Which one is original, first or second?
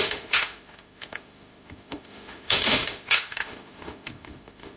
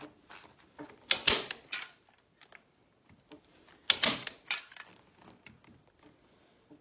second